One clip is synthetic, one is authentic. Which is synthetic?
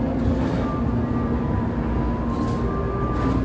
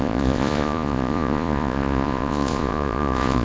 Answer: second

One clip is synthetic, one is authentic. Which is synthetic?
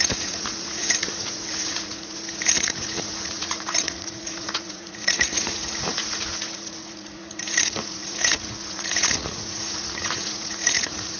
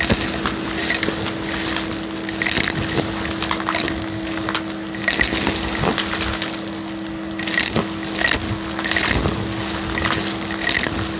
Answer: first